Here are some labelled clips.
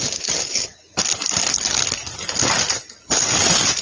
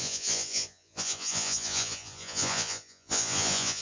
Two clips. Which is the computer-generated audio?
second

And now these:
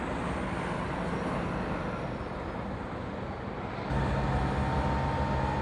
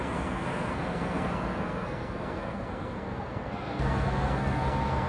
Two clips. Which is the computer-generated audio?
second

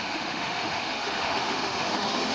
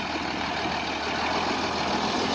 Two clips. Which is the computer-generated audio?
first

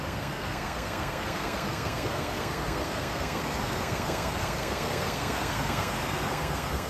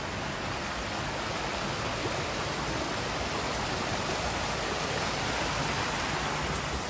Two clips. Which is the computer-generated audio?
first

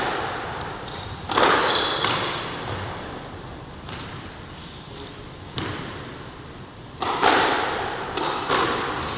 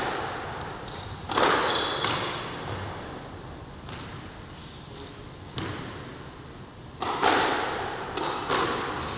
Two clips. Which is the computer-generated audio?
first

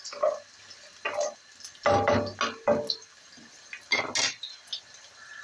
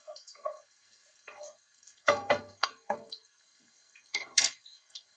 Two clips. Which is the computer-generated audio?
second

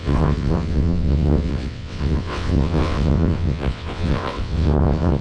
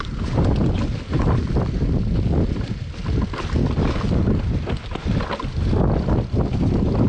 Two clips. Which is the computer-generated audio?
first